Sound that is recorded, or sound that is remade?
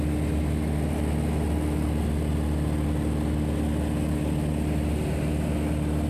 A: recorded